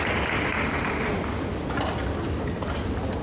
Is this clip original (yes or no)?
yes